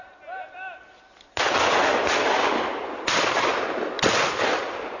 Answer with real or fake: real